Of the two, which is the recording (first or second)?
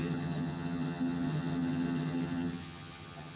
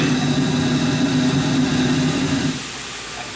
second